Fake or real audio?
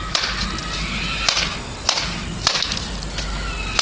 real